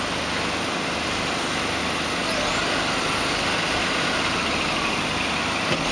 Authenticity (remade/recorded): recorded